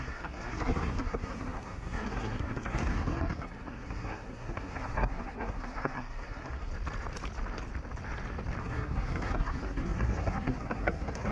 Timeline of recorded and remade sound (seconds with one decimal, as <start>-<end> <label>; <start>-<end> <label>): 0.0-6.7 remade; 6.7-8.6 recorded; 8.6-11.3 remade